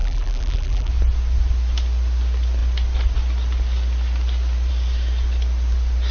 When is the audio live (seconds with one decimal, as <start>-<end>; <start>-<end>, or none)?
0.9-6.1